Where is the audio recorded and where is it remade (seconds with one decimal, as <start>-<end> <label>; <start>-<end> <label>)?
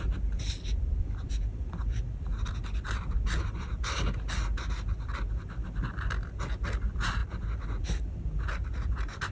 0.0-9.3 recorded